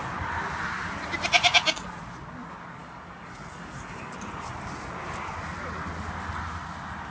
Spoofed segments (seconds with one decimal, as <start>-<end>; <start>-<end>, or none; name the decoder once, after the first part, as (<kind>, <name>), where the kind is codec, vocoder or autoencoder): 2.8-4.1 (codec, DAC)

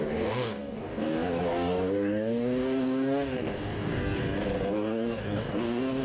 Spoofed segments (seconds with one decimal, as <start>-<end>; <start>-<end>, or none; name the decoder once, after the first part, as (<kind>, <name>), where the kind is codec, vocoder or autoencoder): 0.0-4.2 (codec, DAC); 4.7-6.0